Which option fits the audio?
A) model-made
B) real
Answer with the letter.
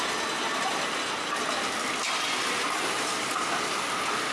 B